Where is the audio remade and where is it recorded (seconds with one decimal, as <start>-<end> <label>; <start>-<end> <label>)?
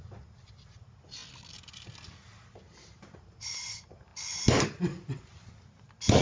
0.0-6.2 recorded